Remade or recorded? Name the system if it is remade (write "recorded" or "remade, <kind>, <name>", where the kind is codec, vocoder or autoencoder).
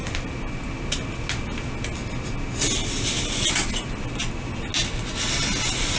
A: recorded